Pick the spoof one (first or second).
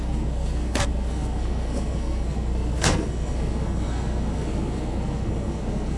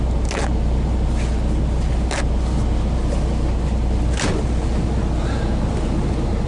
first